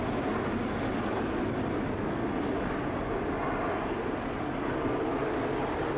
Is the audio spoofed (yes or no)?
no